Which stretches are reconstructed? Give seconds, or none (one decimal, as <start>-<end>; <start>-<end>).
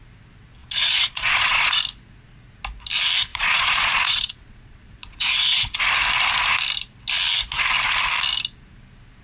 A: 0.6-1.8; 3.3-5.8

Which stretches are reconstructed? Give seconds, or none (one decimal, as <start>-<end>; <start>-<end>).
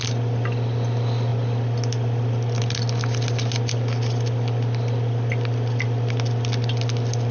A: none